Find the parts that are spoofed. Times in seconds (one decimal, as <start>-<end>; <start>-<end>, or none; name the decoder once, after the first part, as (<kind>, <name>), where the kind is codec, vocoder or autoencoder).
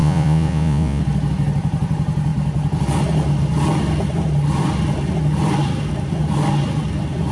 0.0-1.0 (vocoder, Vocos)